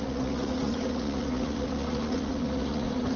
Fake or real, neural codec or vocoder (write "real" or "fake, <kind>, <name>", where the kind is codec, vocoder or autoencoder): fake, vocoder, Vocos